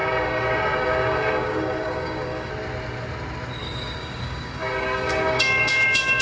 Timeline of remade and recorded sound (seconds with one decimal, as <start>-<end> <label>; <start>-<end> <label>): 0.0-2.5 remade; 2.5-3.6 recorded; 3.6-6.2 remade